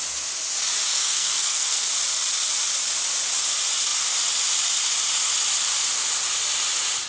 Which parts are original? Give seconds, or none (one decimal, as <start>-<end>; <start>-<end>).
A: 0.0-0.9; 1.9-7.1